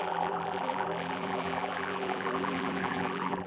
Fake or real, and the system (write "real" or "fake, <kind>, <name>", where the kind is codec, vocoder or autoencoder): fake, vocoder, BigVGAN v2